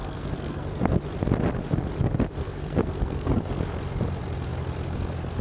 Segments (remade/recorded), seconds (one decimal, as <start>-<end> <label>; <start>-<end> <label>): 0.0-1.0 remade; 1.0-2.4 recorded; 2.4-3.4 remade; 3.4-5.4 recorded